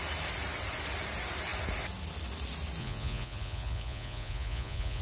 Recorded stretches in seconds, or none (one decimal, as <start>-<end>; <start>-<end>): 0.0-2.8